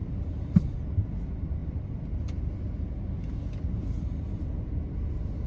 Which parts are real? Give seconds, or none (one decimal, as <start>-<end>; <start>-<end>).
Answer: 1.0-5.5

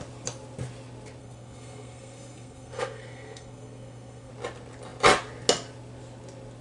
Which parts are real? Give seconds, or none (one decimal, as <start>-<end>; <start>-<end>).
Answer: 0.0-1.2; 4.3-6.6

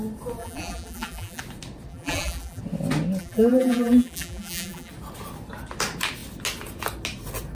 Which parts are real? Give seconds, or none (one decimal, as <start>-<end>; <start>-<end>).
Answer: 0.0-0.4; 1.4-1.9; 2.6-3.2; 4.9-7.5

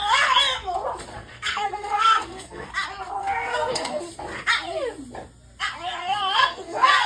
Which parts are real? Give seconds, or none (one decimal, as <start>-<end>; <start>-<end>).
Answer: 0.0-1.1; 2.7-3.2; 4.0-6.0

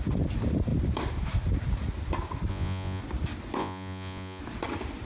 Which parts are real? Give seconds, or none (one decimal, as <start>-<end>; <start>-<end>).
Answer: 0.0-2.5; 3.0-3.6; 4.4-5.0